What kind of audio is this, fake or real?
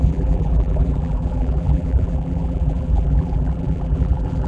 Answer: fake